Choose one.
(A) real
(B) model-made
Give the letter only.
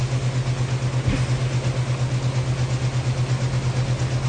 A